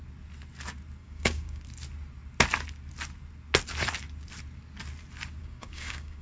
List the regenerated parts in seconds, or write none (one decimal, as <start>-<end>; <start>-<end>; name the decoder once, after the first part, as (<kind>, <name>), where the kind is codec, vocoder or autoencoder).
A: 1.0-1.6 (codec, DAC); 5.4-6.2